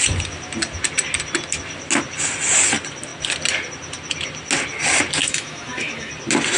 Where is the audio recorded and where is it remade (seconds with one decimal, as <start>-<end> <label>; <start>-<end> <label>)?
0.0-5.2 recorded; 5.2-6.1 remade; 6.1-6.6 recorded